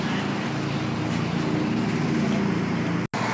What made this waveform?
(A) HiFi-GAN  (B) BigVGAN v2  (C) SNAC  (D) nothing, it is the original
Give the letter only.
D